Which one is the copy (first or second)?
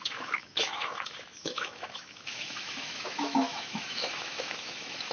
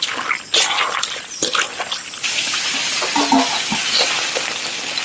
first